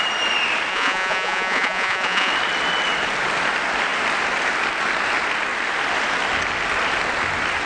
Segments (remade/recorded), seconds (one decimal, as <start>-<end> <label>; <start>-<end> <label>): 0.0-0.7 recorded; 0.7-2.3 remade; 2.3-7.7 recorded